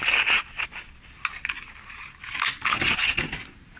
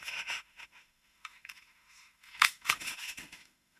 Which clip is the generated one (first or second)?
second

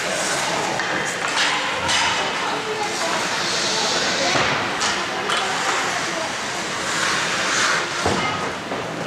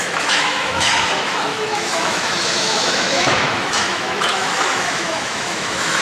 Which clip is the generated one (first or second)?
second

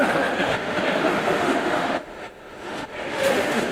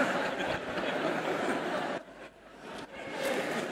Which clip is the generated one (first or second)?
first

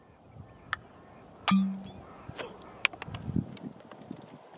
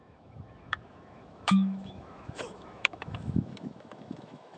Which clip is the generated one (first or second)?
second